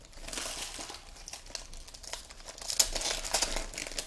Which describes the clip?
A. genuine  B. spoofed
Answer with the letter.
A